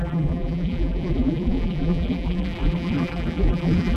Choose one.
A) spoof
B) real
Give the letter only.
A